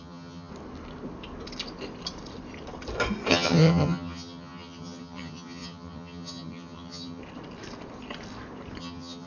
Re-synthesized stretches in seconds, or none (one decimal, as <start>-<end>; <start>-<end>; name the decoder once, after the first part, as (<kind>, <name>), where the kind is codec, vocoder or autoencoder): 0.0-0.5 (vocoder, HiFi-GAN); 3.3-7.2; 8.8-9.3